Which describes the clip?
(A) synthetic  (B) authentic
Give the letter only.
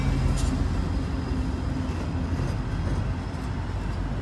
B